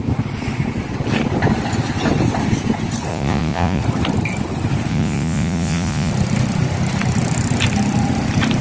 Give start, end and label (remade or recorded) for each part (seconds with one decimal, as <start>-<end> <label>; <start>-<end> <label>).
0.0-3.1 recorded; 3.1-3.8 remade; 3.8-4.9 recorded; 4.9-6.1 remade; 6.1-8.6 recorded